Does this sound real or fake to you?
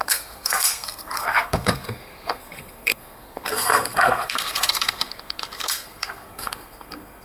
fake